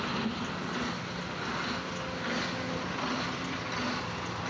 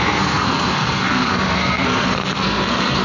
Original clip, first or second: first